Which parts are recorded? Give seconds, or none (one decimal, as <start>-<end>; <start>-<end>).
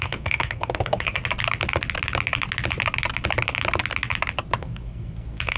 1.2-4.6